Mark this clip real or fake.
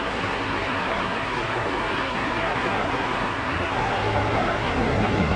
fake